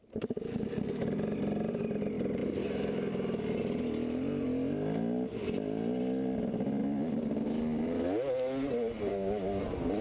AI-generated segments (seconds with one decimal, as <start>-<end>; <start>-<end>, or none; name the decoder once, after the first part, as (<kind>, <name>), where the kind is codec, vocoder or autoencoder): 9.1-9.6 (codec, DAC)